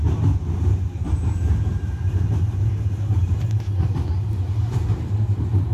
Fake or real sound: fake